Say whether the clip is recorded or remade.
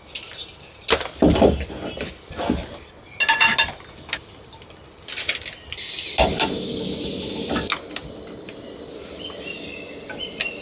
recorded